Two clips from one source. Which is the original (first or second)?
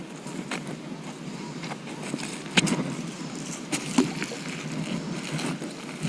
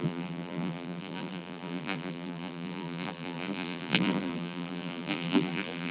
first